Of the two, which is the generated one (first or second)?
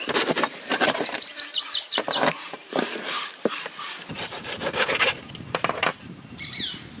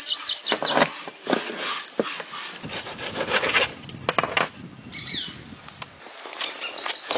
first